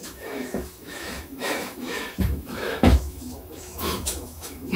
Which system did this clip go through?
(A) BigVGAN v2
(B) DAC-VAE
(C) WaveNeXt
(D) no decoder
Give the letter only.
B